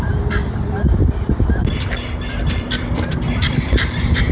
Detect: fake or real fake